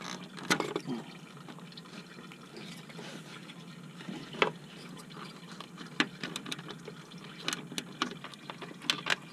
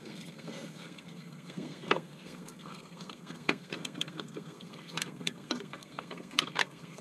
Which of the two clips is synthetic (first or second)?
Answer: second